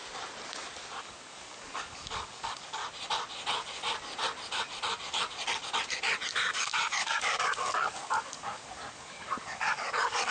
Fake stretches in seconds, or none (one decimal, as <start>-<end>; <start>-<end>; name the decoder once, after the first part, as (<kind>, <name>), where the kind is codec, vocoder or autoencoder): 1.0-2.8 (codec, DAC); 6.3-10.3